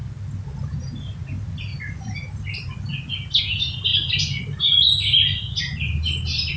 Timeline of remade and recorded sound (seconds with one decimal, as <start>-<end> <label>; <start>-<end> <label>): 0.0-6.6 recorded